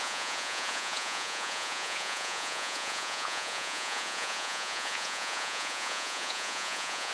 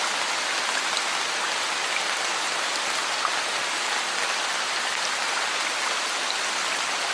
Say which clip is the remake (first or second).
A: first